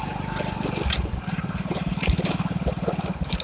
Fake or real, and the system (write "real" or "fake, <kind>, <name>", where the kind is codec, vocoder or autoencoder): fake, vocoder, BigVGAN v2